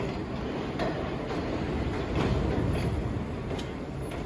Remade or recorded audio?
remade